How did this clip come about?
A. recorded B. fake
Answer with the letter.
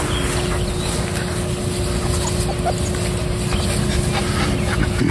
A